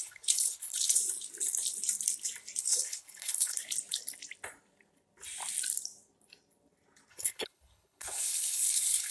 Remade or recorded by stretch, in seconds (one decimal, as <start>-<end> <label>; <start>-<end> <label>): 0.0-1.0 remade; 1.0-2.6 recorded; 2.6-3.6 remade; 3.6-7.1 recorded; 7.1-9.1 remade